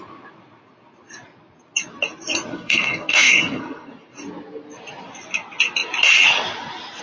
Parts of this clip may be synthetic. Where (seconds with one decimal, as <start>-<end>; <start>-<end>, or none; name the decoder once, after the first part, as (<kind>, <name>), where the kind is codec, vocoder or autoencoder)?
2.5-3.9 (codec, SNAC)